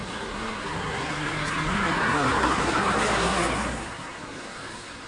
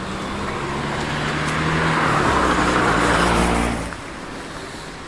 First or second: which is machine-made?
first